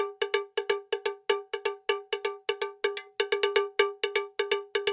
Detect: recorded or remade recorded